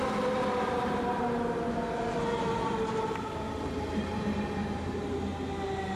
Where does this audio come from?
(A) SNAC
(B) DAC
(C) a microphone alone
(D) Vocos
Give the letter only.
C